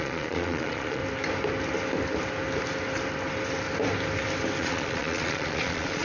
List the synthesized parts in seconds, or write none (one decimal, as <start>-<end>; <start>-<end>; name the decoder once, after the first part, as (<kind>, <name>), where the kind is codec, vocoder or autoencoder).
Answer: 0.0-1.0 (vocoder, Vocos); 4.6-6.0